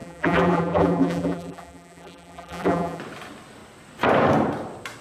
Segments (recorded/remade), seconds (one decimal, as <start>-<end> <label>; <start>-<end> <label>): 0.0-3.0 remade; 3.0-5.0 recorded